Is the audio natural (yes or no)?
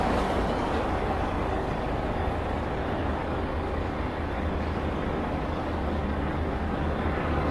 no